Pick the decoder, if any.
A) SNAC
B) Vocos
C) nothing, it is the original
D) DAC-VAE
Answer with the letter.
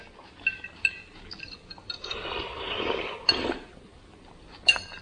C